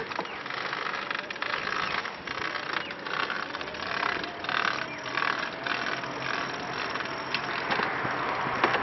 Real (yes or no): yes